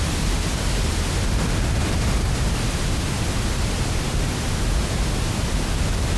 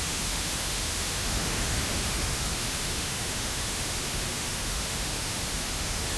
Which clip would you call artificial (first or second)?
second